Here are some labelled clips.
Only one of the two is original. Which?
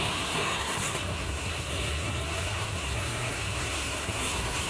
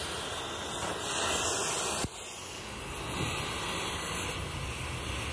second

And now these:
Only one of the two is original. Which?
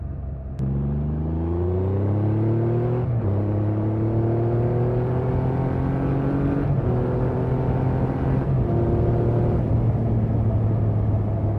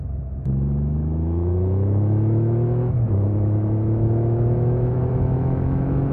first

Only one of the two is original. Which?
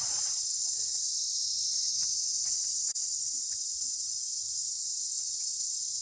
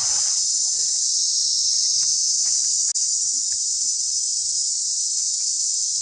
second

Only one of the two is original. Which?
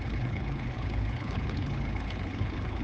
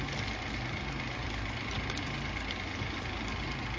second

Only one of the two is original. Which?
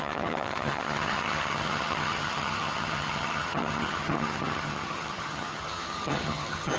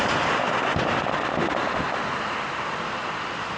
second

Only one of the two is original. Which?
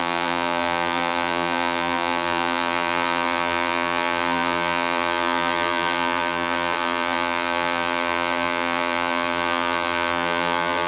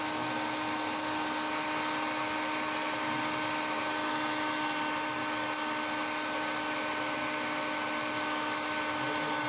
second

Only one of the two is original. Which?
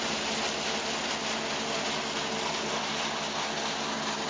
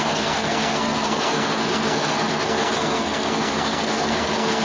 first